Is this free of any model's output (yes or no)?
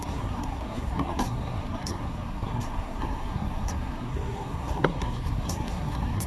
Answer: no